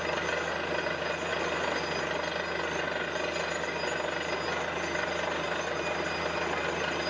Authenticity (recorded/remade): recorded